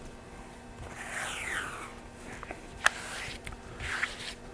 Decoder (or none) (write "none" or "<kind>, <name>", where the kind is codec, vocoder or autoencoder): none